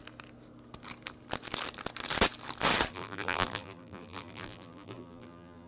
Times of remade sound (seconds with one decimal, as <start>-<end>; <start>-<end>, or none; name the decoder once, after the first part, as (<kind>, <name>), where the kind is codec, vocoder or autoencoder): 2.9-5.7 (vocoder, BigVGAN v2)